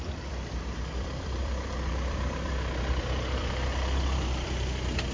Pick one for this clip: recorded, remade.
remade